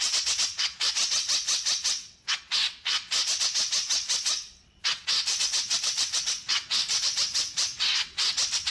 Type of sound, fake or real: fake